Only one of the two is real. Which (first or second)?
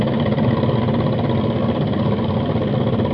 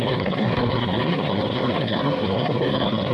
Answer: first